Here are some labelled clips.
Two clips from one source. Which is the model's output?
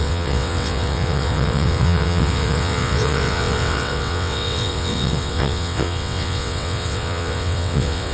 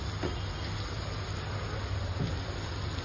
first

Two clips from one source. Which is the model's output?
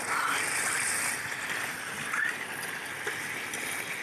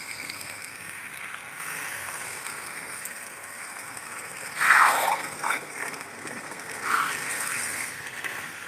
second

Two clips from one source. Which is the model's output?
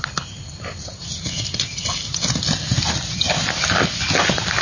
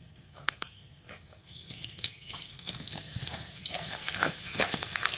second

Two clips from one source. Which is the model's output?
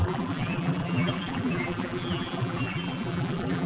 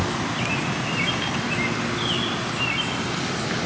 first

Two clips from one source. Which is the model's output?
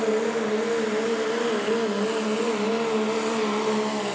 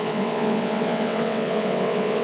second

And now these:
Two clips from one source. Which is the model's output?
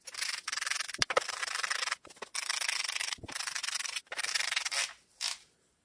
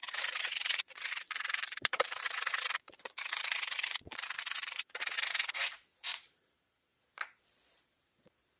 second